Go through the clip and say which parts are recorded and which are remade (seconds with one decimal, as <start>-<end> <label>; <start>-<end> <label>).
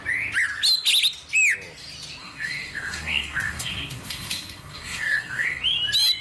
0.0-2.2 recorded; 2.2-5.6 remade; 5.6-6.2 recorded